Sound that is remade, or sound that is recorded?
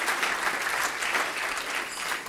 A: recorded